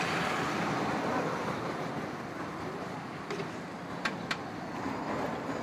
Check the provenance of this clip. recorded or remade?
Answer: remade